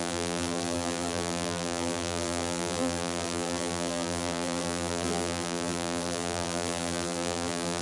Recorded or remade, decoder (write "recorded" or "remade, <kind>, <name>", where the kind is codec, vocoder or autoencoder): remade, vocoder, BigVGAN v2